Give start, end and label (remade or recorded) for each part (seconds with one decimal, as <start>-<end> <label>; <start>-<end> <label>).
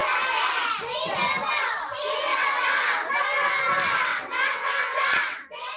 0.0-2.3 recorded; 2.3-3.1 remade; 3.1-4.1 recorded; 4.1-5.8 remade